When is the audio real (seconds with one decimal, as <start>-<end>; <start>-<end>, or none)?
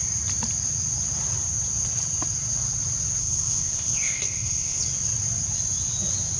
0.0-3.2; 4.8-6.4